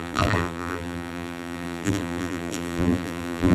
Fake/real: fake